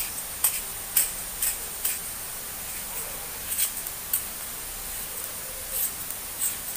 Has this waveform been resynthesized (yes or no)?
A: no